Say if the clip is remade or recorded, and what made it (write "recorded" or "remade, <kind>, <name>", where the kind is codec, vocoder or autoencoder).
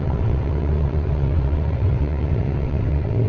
remade, vocoder, WaveNeXt